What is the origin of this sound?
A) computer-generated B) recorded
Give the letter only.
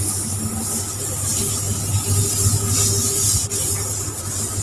B